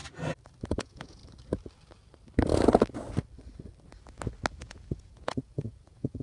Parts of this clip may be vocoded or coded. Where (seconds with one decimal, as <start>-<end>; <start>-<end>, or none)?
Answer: 0.7-1.2; 4.5-6.2